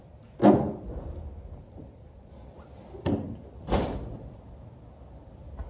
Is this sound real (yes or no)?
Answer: yes